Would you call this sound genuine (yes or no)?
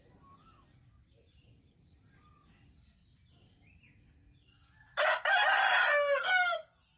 yes